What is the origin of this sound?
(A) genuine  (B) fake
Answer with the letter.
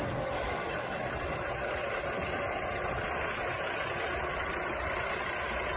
A